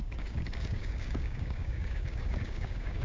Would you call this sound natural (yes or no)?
no